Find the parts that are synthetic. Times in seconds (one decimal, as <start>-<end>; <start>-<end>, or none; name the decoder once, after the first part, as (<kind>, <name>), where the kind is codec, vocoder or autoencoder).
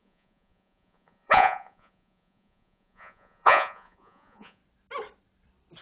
0.0-4.6 (vocoder, Vocos)